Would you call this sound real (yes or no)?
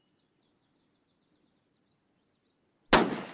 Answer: yes